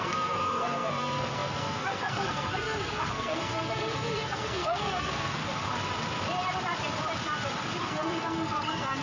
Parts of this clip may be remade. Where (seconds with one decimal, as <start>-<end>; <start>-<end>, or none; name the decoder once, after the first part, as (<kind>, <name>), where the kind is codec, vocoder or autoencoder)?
0.0-5.4 (codec, SNAC); 7.8-9.0